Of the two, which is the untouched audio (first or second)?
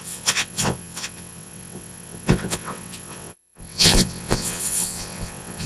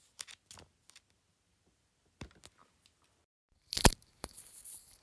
second